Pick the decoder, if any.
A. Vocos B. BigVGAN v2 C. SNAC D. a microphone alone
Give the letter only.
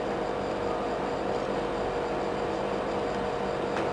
D